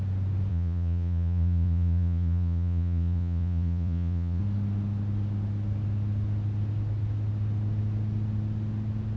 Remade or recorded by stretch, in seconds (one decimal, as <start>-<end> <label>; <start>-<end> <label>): 0.0-0.5 recorded; 0.5-4.4 remade; 4.4-9.2 recorded